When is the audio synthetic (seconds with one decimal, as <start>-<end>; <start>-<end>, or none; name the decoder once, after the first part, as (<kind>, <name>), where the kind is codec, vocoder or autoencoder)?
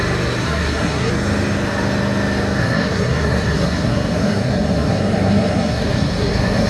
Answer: 0.4-1.1 (codec, SNAC); 2.6-6.7